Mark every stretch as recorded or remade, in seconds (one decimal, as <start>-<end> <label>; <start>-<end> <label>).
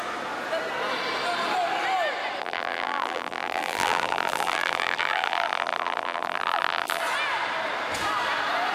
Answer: 0.0-2.4 recorded; 2.4-7.0 remade; 7.0-8.7 recorded